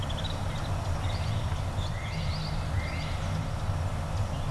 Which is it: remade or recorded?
recorded